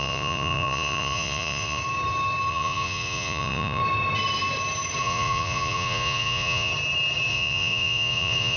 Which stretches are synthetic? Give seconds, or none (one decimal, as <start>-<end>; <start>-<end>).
0.0-1.8; 2.5-3.8; 5.0-6.7; 7.3-8.6

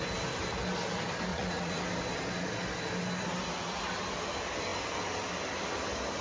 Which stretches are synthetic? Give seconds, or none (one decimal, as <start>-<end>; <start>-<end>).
1.3-1.8

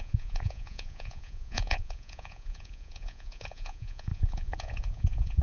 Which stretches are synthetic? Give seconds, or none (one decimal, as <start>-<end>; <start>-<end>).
0.0-5.4

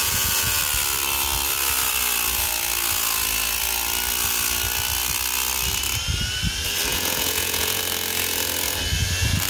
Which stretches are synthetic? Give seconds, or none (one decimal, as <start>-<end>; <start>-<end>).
0.0-0.6; 6.9-7.8